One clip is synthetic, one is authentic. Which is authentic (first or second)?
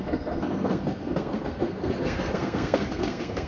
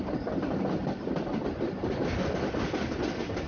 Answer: second